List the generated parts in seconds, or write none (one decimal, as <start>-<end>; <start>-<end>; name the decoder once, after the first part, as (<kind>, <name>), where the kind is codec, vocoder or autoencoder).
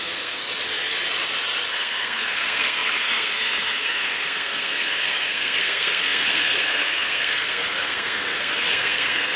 0.0-0.4 (codec, SNAC); 1.7-9.4